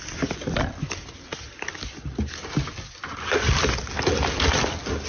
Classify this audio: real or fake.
real